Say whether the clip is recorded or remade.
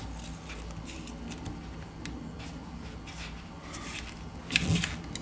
recorded